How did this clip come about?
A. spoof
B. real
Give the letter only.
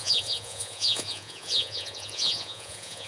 A